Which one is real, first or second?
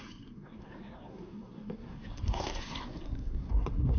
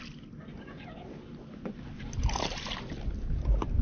second